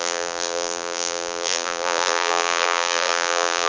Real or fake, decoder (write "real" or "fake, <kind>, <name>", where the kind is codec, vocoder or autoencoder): fake, vocoder, BigVGAN v2